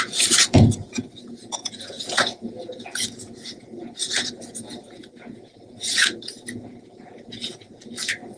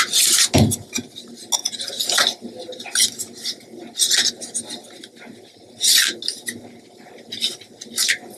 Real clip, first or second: second